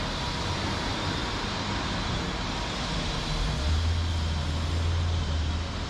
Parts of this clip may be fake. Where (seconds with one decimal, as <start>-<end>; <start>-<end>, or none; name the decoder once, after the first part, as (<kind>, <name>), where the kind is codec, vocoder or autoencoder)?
none